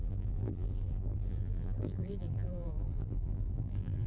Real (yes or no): no